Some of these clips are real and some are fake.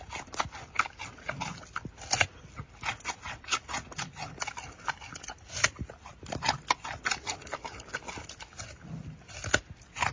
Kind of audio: real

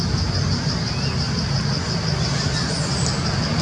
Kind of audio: real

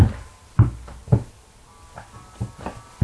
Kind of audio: real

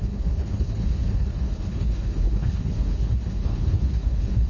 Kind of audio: fake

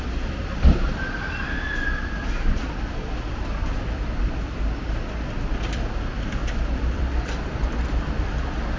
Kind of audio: fake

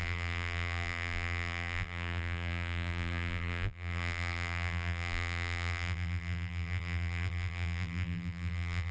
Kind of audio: fake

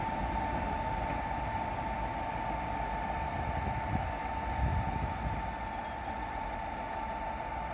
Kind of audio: real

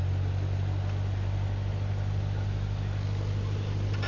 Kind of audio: real